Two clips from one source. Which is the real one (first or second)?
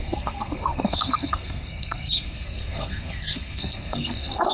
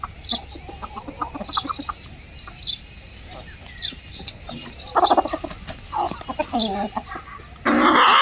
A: second